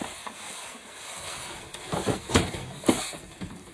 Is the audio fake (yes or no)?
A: yes